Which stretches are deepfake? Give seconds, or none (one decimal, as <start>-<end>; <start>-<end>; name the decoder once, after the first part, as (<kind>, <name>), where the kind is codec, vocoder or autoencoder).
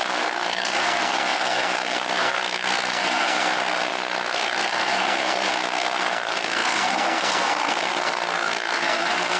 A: 0.0-9.4 (codec, SNAC)